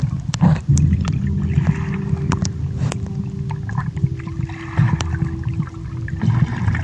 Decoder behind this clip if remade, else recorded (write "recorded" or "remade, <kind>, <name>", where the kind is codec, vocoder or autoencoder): recorded